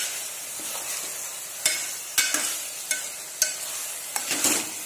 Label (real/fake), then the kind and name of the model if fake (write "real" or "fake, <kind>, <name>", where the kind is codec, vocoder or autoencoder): real